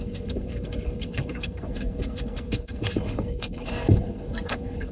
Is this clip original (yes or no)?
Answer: no